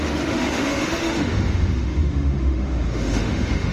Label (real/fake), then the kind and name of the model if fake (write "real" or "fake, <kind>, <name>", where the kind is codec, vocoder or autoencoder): fake, autoencoder, DAC-VAE